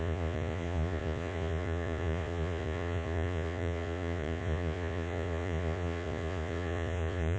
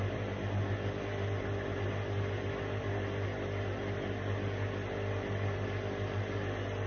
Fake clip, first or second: first